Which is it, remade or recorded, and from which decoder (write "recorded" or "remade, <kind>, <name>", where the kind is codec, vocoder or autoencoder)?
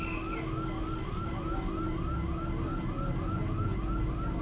recorded